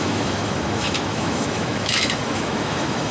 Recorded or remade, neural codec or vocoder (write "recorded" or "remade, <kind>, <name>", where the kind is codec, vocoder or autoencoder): remade, autoencoder, DAC-VAE